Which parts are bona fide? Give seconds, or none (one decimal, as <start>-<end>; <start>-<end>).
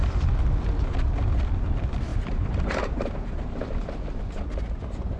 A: 0.0-2.1; 4.5-5.2